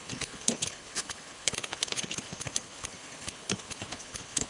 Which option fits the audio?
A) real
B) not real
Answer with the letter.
B